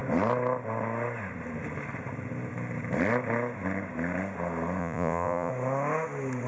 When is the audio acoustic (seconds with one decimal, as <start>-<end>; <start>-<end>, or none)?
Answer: 0.0-4.8; 5.5-6.5